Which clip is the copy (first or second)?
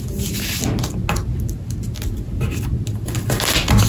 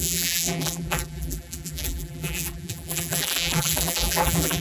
second